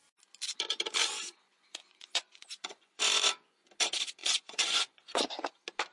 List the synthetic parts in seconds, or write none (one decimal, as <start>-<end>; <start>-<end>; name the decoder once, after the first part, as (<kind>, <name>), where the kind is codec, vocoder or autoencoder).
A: 1.0-3.7 (vocoder, Vocos); 4.2-5.5